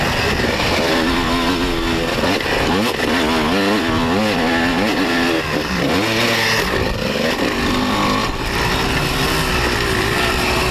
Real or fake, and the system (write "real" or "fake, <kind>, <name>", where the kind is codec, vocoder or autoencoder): real